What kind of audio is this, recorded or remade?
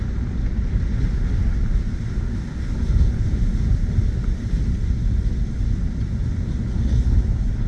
recorded